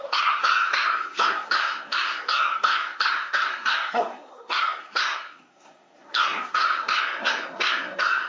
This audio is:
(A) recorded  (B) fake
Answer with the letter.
B